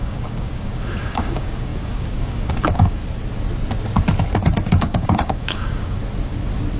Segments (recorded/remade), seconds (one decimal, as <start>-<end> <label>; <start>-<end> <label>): 0.0-3.0 remade; 3.0-4.7 recorded; 4.7-6.0 remade; 6.0-6.8 recorded